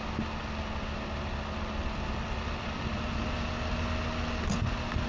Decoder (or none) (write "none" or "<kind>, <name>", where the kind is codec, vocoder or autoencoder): none